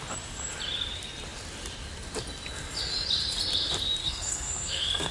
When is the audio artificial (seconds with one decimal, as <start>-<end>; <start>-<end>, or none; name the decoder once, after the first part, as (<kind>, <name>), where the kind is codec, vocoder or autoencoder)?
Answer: 4.0-5.1 (codec, SNAC)